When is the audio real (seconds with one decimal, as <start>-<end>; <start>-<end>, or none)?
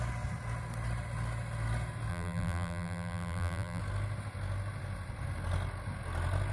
0.0-2.1; 3.8-6.5